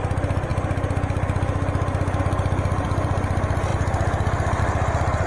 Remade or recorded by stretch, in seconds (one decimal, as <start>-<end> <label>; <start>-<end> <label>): 0.0-0.5 remade; 0.5-2.2 recorded; 2.2-3.7 remade; 3.7-4.6 recorded; 4.6-5.3 remade